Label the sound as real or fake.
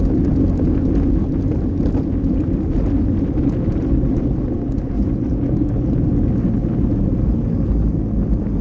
real